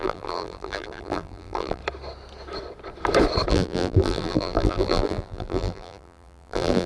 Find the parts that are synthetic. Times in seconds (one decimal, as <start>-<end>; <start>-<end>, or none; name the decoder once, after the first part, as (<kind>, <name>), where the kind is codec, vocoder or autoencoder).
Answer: 0.0-1.8 (vocoder, BigVGAN v2); 3.5-6.9